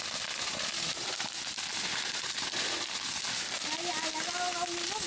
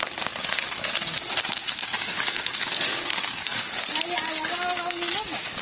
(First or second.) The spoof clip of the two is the second